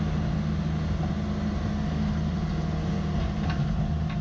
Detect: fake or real real